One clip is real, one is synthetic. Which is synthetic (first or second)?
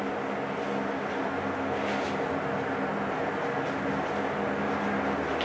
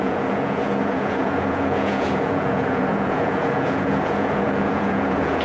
second